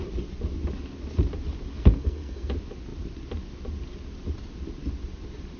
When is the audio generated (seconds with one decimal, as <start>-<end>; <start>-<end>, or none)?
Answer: 1.7-2.5